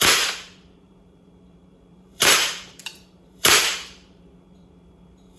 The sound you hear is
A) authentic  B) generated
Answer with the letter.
B